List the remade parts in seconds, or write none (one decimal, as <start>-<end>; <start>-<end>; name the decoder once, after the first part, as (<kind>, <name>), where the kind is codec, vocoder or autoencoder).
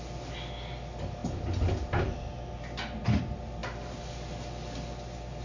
none